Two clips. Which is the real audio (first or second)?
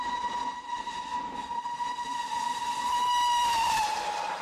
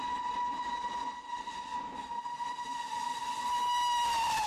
second